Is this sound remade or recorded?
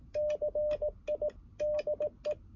recorded